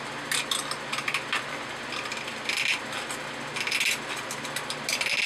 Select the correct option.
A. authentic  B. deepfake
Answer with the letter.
A